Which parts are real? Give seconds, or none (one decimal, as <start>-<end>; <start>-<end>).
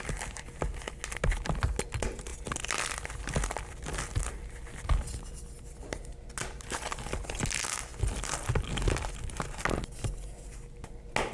0.0-11.3